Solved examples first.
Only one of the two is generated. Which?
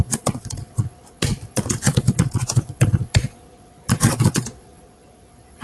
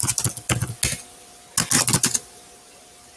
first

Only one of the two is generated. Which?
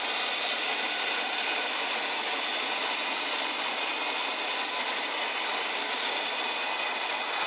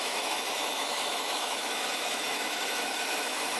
second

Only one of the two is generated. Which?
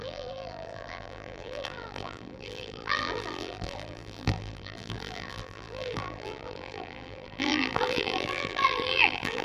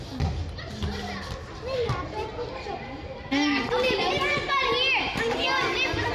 first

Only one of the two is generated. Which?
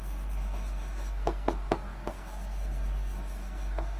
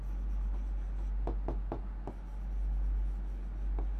first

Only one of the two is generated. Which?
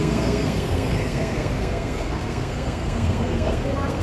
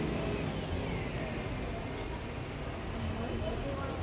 first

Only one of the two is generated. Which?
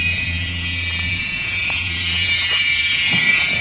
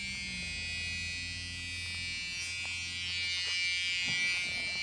first